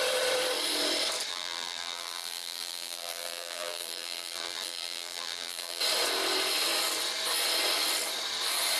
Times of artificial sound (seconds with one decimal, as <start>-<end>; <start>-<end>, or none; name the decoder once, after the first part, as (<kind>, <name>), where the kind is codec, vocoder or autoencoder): 1.3-5.8 (vocoder, BigVGAN v2)